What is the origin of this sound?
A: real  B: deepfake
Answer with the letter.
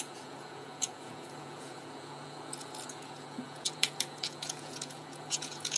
B